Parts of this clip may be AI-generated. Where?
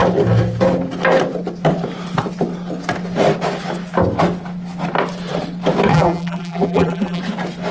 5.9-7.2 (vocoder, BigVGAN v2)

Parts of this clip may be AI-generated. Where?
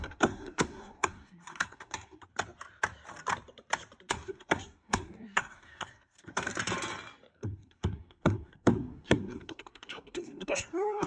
0.0-2.3 (codec, SNAC); 4.1-6.5; 7.3-11.1